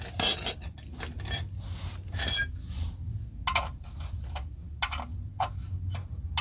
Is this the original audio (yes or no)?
yes